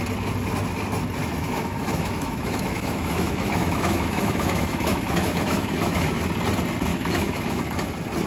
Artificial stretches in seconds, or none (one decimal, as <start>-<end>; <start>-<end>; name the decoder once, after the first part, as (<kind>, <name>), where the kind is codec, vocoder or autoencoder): 1.2-6.2 (autoencoder, DAC-VAE); 6.9-7.6